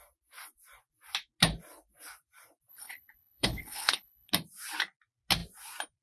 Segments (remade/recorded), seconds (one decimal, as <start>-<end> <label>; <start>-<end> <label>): 0.0-2.7 recorded; 2.7-4.3 remade; 4.3-6.0 recorded